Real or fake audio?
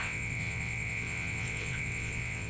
fake